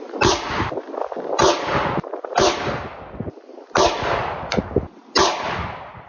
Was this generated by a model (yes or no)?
no